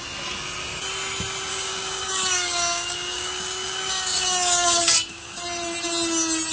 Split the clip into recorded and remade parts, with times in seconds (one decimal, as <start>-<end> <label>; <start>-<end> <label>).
0.0-1.5 recorded; 1.5-5.4 remade; 5.4-6.5 recorded